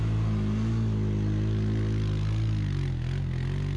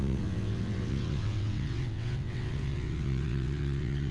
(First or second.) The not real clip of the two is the second